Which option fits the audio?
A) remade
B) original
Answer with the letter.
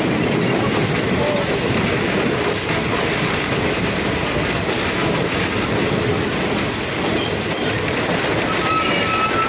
B